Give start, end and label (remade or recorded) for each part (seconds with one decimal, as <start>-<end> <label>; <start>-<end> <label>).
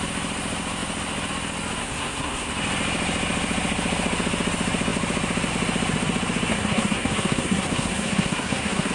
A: 0.0-1.8 recorded; 1.8-2.5 remade; 2.5-6.5 recorded; 6.5-8.9 remade